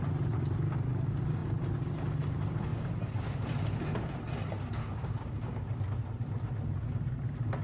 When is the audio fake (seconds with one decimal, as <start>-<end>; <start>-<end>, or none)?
4.8-5.7